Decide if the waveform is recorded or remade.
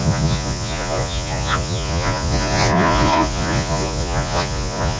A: remade